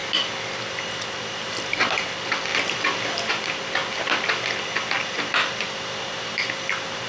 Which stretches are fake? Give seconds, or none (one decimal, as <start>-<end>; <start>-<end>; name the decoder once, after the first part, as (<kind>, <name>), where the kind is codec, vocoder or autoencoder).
none